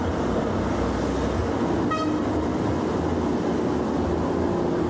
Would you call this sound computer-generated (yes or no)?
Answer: no